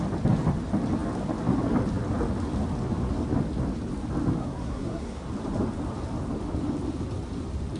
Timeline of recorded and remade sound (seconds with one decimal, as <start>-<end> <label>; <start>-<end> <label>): 0.0-4.4 recorded; 4.4-5.3 remade; 5.3-7.8 recorded